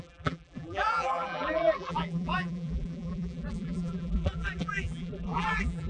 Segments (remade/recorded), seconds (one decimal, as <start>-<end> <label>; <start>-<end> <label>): 0.0-5.9 remade

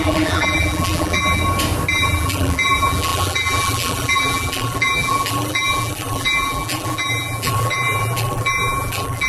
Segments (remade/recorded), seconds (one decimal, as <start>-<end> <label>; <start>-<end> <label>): 0.0-1.4 remade; 1.4-1.9 recorded; 1.9-9.3 remade